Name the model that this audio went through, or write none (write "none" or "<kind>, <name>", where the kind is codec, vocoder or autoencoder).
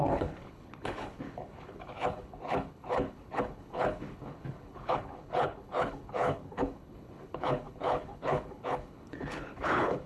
codec, HILCodec